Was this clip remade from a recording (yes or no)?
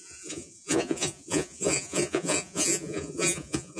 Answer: yes